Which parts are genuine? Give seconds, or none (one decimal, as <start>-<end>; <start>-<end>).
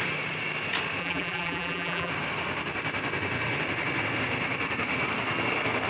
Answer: 0.0-1.0; 2.1-5.9